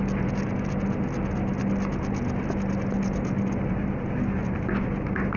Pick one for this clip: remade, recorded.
recorded